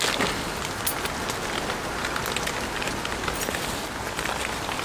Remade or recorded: recorded